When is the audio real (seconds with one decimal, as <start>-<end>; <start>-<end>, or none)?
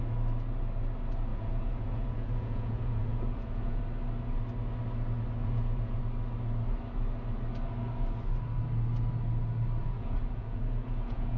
0.0-1.3; 3.8-5.4; 6.0-9.8